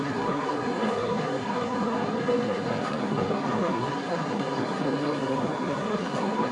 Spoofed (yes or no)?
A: yes